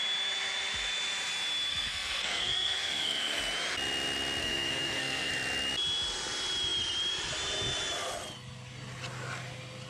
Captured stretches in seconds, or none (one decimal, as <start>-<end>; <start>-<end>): 0.0-1.7; 3.4-4.4; 5.3-9.9